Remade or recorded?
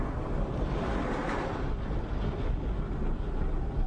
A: recorded